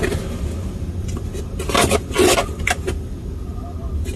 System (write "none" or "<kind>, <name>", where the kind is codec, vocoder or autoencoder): none